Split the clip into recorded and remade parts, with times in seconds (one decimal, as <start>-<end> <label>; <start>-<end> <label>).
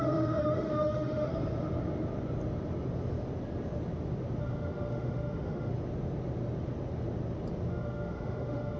0.0-1.3 remade; 1.3-4.4 recorded; 4.4-5.7 remade; 5.7-7.7 recorded; 7.7-8.8 remade